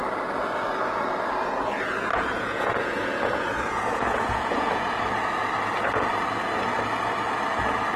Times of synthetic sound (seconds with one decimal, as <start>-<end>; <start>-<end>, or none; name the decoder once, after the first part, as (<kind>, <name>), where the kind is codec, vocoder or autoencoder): 2.1-5.0 (vocoder, Vocos)